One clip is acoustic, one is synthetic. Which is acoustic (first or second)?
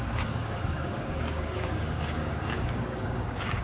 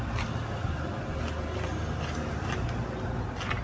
second